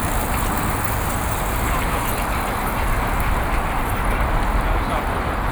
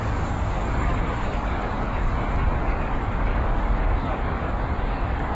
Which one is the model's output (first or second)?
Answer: second